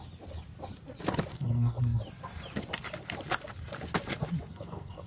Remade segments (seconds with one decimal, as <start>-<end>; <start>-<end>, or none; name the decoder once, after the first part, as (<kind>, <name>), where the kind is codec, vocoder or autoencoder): 1.3-2.0 (codec, SNAC); 4.5-5.1